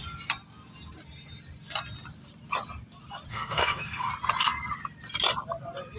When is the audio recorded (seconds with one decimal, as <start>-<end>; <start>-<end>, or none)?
0.0-3.3; 4.1-6.0

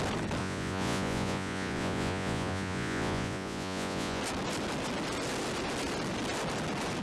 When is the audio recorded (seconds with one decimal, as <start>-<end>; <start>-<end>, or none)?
0.0-0.4; 4.2-7.0

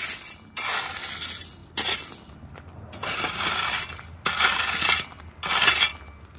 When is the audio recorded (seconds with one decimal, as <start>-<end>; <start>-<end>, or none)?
0.0-6.4

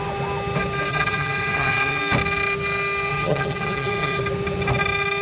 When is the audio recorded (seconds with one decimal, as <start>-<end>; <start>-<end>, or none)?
0.0-0.9; 2.0-3.1; 4.2-5.2

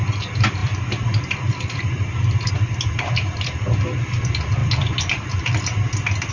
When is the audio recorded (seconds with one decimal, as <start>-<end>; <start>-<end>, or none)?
0.0-6.3

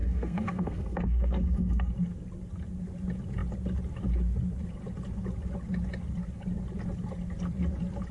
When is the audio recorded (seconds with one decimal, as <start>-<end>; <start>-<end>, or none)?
1.9-8.1